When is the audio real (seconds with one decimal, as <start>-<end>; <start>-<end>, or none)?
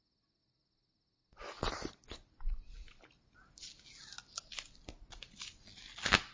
0.0-6.3